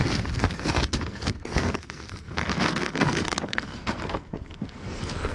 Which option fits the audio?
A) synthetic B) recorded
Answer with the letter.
A